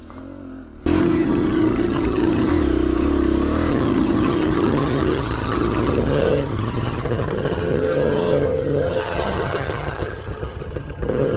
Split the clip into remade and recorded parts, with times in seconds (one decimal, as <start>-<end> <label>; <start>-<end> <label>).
0.0-1.0 recorded; 1.0-2.5 remade; 2.5-3.7 recorded; 3.7-11.4 remade